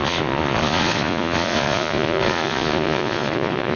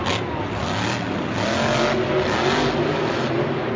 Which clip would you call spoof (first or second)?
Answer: first